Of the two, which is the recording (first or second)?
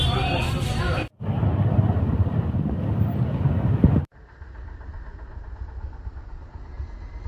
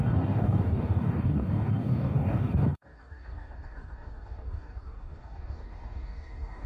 first